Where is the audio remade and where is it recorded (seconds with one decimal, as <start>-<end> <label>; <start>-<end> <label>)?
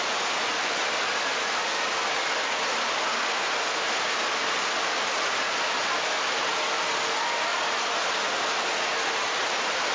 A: 0.0-7.5 recorded; 7.5-8.0 remade; 8.0-9.9 recorded